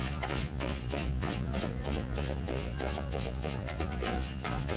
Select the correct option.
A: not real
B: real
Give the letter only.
A